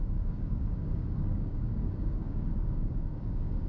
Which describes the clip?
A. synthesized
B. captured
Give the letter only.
A